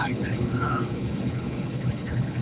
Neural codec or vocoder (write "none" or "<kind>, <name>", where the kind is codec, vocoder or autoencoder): codec, HILCodec